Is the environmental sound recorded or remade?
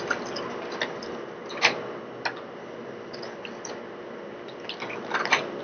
recorded